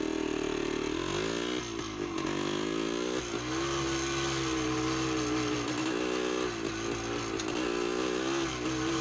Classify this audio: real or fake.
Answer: real